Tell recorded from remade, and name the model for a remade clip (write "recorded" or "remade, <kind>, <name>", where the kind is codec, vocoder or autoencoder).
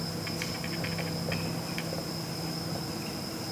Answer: recorded